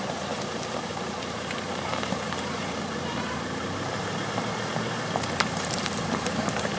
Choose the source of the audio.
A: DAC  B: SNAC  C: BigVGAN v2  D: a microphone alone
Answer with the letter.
C